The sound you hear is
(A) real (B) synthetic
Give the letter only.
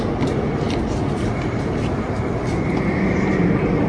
A